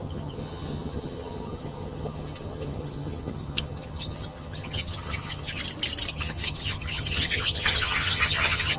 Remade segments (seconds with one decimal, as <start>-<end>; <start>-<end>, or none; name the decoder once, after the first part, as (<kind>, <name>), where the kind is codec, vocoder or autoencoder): 0.0-5.6 (vocoder, HiFi-GAN); 6.1-8.8

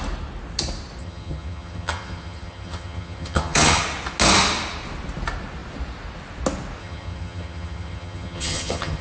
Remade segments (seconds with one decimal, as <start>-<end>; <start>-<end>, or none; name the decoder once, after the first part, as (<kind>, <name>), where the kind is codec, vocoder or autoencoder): 1.0-3.8 (vocoder, HiFi-GAN); 6.8-9.0

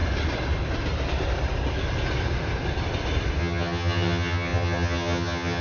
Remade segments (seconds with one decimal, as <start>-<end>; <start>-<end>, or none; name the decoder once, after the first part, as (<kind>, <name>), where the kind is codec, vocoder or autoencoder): 3.4-5.6 (vocoder, HiFi-GAN)

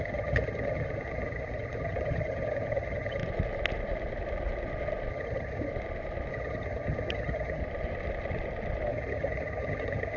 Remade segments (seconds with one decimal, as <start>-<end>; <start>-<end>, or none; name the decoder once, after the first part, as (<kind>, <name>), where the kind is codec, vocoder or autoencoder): 0.0-3.2 (vocoder, HiFi-GAN); 5.1-5.7; 6.3-7.6; 8.9-10.2

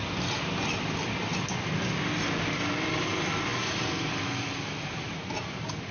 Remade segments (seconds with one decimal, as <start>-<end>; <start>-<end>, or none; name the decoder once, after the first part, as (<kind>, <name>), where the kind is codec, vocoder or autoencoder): none

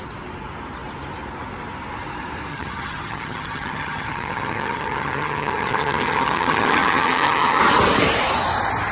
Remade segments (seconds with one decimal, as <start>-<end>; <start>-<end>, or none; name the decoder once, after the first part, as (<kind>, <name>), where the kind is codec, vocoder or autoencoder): 2.5-7.6 (vocoder, HiFi-GAN)

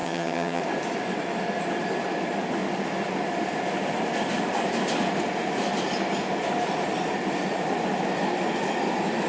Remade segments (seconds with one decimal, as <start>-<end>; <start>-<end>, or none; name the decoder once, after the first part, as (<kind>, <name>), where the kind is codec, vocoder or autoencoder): 0.0-0.6 (vocoder, HiFi-GAN)